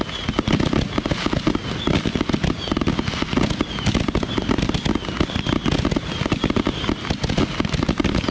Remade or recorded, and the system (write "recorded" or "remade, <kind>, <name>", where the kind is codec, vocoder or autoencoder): recorded